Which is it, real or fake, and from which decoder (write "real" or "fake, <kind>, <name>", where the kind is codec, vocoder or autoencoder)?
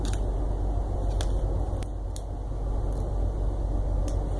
real